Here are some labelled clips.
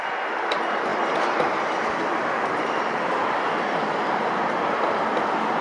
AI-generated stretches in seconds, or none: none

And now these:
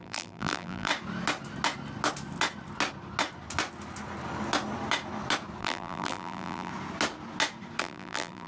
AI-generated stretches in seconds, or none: 0.0-0.9; 5.6-6.7; 7.8-8.5